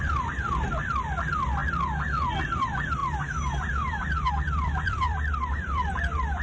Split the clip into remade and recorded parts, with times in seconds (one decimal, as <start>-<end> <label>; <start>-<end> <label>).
0.0-1.6 remade; 1.6-2.4 recorded; 2.4-3.0 remade; 3.0-4.3 recorded; 4.3-6.4 remade